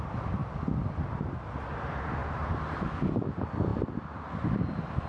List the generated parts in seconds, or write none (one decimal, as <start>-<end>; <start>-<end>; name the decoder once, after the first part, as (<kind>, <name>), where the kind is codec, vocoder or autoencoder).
0.4-1.3 (vocoder, BigVGAN v2)